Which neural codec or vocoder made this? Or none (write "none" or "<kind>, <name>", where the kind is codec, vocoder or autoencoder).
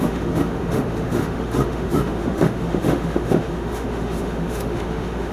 autoencoder, DAC-VAE